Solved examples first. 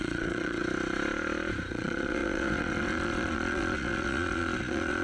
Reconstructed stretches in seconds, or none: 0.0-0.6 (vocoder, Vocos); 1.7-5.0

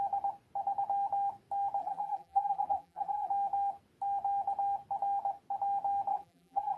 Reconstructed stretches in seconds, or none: 1.8-3.3 (vocoder, BigVGAN v2); 6.1-6.8